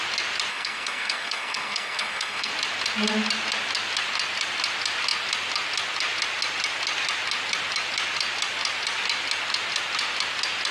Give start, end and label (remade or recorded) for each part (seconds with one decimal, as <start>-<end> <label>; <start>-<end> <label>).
0.0-0.5 recorded; 0.5-2.5 remade; 2.5-10.7 recorded